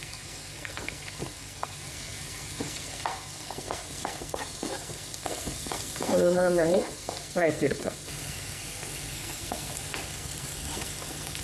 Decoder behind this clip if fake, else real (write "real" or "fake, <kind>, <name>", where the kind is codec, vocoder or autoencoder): fake, codec, SNAC